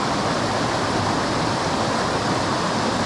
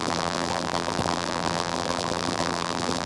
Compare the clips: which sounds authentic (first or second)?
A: first